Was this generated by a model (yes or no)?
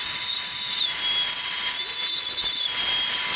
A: no